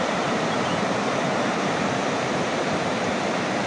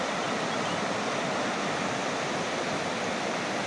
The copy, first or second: first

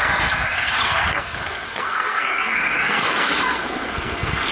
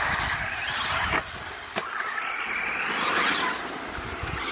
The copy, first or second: first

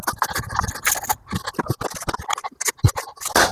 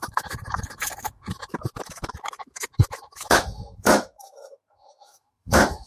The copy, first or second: second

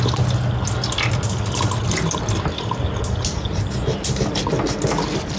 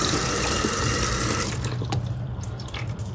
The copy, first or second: second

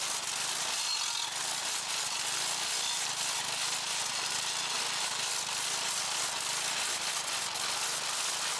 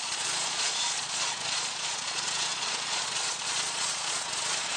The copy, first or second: second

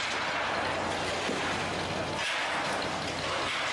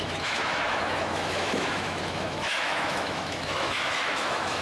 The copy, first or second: second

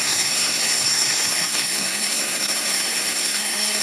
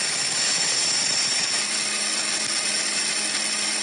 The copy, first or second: first